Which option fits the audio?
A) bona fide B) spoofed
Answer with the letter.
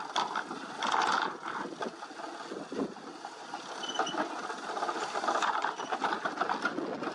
A